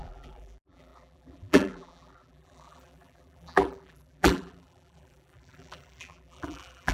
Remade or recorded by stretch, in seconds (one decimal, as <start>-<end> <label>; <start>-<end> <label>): 0.0-6.9 remade

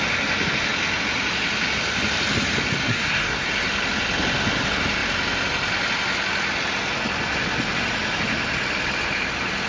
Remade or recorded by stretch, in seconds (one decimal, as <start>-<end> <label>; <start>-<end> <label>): 0.0-2.9 recorded; 2.9-3.5 remade; 3.5-9.7 recorded

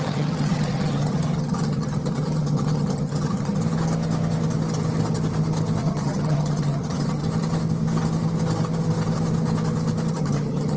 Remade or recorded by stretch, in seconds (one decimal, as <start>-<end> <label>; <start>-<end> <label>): 0.0-3.6 remade; 3.6-5.8 recorded; 5.8-7.2 remade; 7.2-10.1 recorded; 10.1-10.8 remade

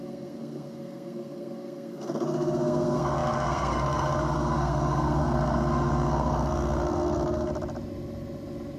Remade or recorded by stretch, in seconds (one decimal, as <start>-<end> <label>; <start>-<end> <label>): 0.0-7.5 remade; 7.5-8.8 recorded

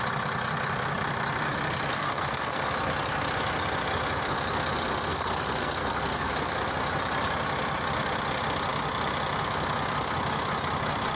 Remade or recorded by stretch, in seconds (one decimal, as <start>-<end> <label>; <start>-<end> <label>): 0.0-1.9 recorded; 1.9-2.7 remade; 2.7-5.1 recorded; 5.1-6.3 remade; 6.3-11.2 recorded

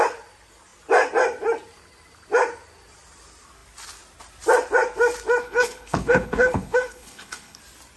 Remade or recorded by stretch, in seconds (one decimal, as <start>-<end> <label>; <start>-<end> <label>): 0.0-5.4 recorded; 5.4-7.6 remade; 7.6-8.0 recorded

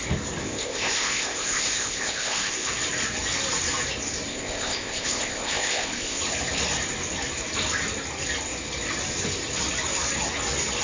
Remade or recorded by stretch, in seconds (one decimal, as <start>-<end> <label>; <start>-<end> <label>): 0.0-0.4 recorded; 0.4-2.7 remade; 2.7-4.3 recorded; 4.3-6.2 remade; 6.2-10.8 recorded